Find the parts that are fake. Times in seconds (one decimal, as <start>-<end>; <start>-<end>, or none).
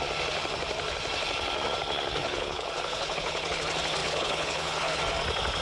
2.2-3.6; 4.0-5.0